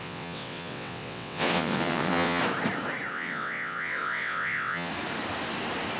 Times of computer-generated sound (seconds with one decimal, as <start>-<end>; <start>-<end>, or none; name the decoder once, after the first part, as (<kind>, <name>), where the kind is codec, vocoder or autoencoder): 0.0-2.4 (vocoder, WaveNeXt); 3.1-4.9